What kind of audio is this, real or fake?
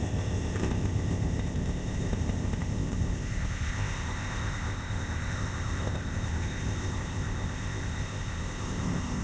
fake